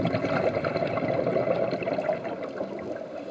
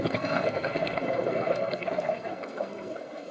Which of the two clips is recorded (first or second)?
first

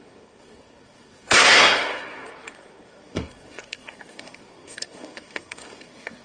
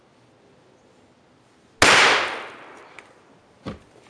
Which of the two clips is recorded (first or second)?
second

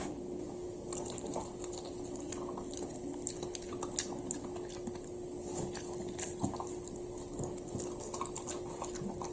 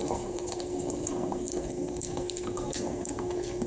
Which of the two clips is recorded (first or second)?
first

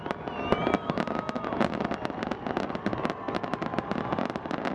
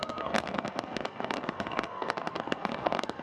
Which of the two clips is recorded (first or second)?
first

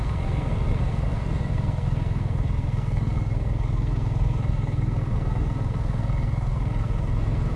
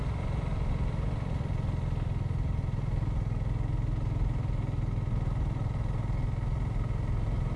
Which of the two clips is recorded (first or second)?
second